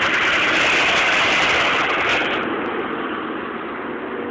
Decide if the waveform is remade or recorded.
recorded